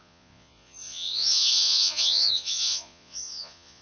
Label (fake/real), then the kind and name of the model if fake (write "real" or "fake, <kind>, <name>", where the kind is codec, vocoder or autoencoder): fake, vocoder, Vocos